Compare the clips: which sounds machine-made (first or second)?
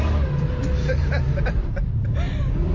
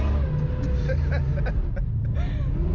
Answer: first